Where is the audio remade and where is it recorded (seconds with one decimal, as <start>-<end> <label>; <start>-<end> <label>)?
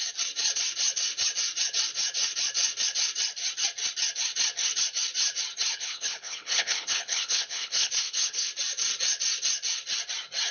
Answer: 0.0-5.7 recorded; 5.7-8.5 remade; 8.5-10.5 recorded